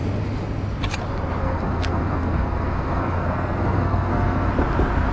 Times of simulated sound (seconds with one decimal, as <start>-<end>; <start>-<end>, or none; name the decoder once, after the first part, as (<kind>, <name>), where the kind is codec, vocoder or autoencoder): 1.4-4.5 (codec, SNAC)